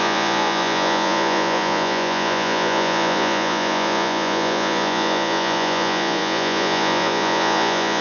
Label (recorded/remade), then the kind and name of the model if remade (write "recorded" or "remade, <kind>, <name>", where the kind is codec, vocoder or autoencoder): remade, vocoder, Vocos